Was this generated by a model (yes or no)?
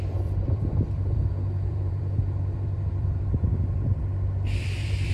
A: yes